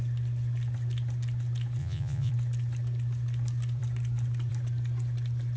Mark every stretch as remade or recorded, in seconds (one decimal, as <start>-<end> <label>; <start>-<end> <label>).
0.0-1.8 recorded; 1.8-2.3 remade; 2.3-5.6 recorded